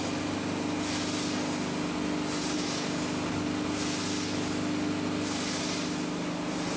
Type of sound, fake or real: real